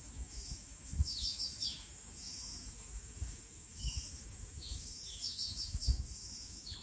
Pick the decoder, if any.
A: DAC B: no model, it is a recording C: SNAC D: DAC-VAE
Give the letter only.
D